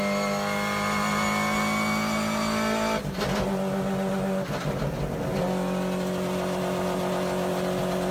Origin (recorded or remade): recorded